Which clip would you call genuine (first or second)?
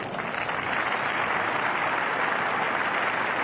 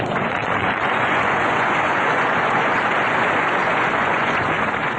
first